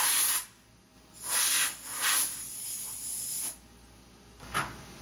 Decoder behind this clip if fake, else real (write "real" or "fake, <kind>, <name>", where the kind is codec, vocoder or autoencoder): real